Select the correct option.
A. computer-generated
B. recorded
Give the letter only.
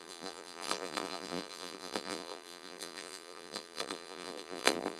A